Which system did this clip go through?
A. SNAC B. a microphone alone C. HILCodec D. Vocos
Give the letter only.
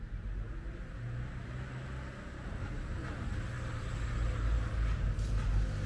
B